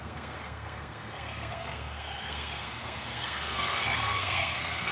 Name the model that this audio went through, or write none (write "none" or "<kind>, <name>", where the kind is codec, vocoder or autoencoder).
codec, SNAC